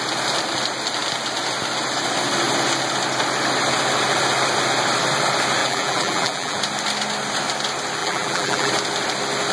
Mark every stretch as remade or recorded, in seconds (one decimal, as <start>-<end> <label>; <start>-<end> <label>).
0.0-5.6 recorded; 5.6-6.6 remade; 6.6-8.0 recorded; 8.0-8.7 remade; 8.7-9.5 recorded